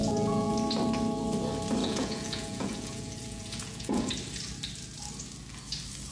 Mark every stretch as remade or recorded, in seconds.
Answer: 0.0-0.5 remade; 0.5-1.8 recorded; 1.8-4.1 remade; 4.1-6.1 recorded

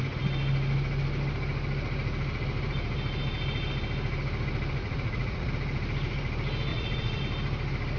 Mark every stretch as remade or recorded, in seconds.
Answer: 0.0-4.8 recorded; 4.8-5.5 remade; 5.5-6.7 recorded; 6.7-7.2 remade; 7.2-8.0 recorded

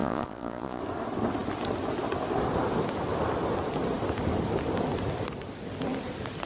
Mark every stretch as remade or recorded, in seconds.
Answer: 0.0-0.8 remade; 0.8-6.5 recorded

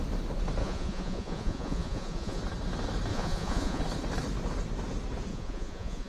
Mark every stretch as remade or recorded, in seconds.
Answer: 0.0-0.6 recorded; 0.6-2.4 remade; 2.4-3.1 recorded; 3.1-3.8 remade; 3.8-5.3 recorded; 5.3-6.1 remade